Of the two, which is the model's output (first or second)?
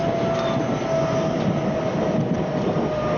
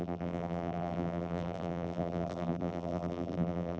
second